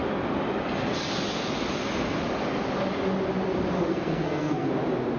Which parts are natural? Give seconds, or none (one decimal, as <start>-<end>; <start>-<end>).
0.0-3.9; 4.7-5.2